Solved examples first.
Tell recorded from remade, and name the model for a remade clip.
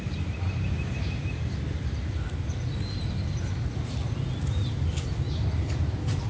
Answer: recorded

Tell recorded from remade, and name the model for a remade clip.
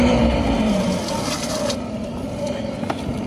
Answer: recorded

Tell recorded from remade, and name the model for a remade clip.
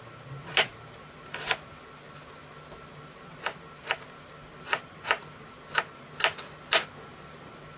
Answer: recorded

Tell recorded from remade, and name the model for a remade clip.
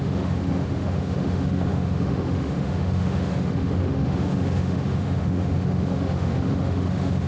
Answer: remade, autoencoder, DAC-VAE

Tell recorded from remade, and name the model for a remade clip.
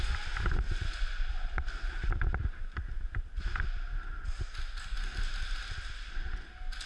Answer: recorded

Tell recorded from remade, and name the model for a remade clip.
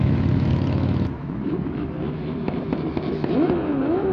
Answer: remade, autoencoder, DAC-VAE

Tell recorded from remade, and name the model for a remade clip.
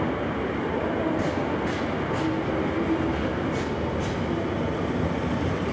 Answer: recorded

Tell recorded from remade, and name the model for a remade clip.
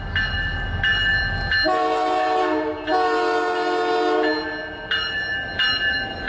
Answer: recorded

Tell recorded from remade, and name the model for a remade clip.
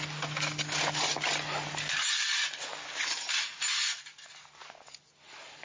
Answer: recorded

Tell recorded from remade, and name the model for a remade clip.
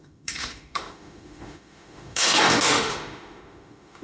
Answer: remade, autoencoder, DAC-VAE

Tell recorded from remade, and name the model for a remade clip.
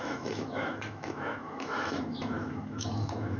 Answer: remade, autoencoder, DAC-VAE